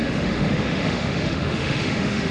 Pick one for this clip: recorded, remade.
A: remade